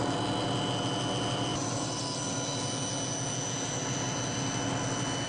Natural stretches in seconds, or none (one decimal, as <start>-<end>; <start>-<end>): 0.0-5.3